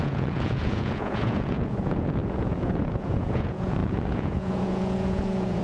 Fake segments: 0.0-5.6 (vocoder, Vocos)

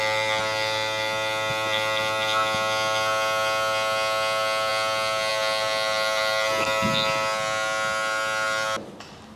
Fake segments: none

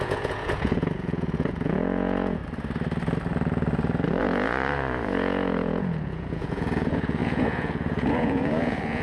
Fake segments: 0.0-2.4 (vocoder, Vocos); 4.2-9.0

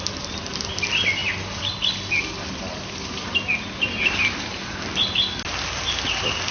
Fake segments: none

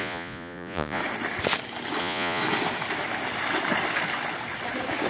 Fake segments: 0.0-1.0 (vocoder, Vocos); 2.0-2.4

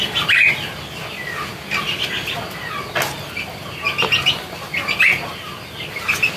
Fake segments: none